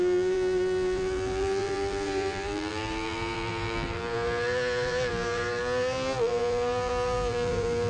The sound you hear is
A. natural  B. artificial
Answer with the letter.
B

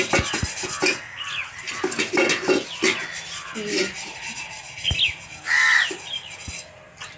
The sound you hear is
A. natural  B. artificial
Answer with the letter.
A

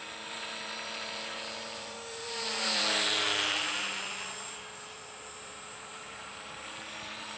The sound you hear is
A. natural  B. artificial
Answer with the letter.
B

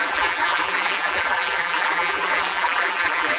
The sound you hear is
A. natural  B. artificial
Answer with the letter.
B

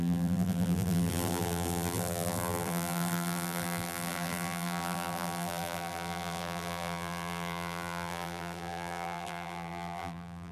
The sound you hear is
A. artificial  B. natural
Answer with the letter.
A